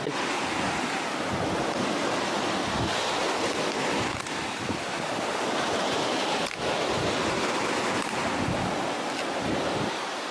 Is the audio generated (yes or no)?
no